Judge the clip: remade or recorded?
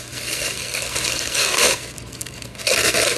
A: remade